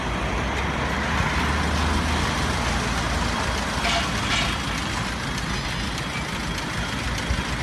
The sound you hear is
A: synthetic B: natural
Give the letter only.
B